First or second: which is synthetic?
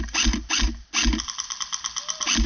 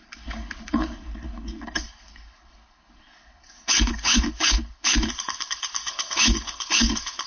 second